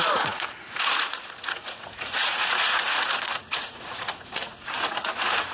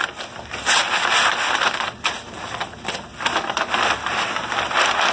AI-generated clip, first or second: first